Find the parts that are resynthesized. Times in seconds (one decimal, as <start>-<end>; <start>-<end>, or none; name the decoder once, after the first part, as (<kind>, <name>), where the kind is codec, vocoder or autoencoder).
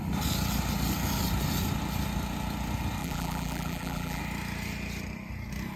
3.0-4.2 (vocoder, BigVGAN v2)